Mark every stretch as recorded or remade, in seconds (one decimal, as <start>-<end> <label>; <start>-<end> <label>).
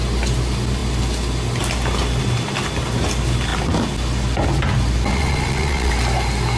0.0-5.1 recorded; 5.1-5.9 remade; 5.9-6.6 recorded